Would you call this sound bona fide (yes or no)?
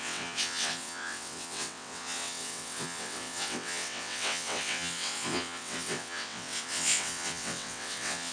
no